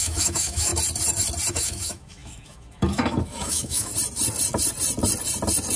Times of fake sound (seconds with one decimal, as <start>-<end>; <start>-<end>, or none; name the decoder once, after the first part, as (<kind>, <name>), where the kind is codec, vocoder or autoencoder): 0.0-0.7 (autoencoder, DAC-VAE); 1.5-3.9